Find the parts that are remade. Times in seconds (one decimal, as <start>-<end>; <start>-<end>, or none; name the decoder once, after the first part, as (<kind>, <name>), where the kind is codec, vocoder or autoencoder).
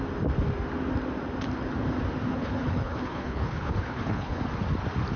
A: 2.3-4.4 (codec, HILCodec)